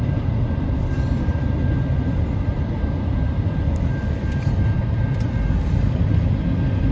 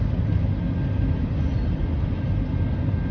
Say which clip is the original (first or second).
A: second